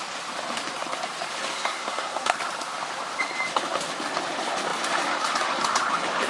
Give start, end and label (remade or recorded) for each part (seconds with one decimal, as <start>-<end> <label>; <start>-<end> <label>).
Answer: 0.0-1.5 recorded; 1.5-2.4 remade; 2.4-6.3 recorded